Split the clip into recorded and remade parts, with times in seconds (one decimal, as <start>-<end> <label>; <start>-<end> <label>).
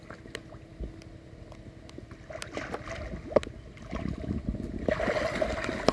0.0-5.9 recorded